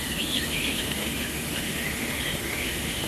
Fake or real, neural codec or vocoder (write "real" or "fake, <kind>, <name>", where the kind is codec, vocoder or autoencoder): fake, autoencoder, DAC-VAE